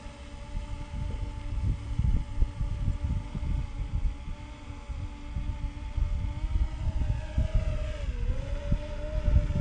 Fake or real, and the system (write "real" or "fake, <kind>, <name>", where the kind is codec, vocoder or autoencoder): real